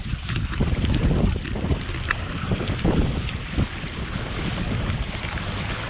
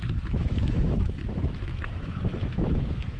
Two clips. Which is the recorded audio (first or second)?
first